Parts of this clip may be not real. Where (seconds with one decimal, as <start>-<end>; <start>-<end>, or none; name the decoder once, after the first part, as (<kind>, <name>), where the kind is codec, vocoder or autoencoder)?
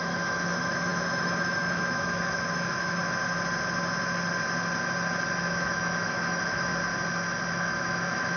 0.0-3.0 (autoencoder, DAC-VAE); 5.5-6.7; 7.5-8.4